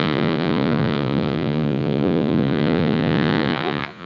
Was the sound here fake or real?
fake